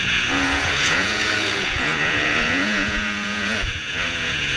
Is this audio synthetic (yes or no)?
yes